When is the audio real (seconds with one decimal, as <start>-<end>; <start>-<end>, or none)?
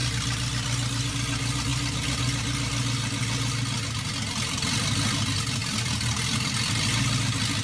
0.0-7.6